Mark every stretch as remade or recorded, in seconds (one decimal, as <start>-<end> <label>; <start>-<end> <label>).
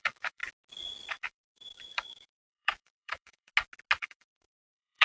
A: 0.0-0.4 remade; 0.4-1.1 recorded; 1.1-3.5 remade; 3.5-4.0 recorded; 4.0-5.0 remade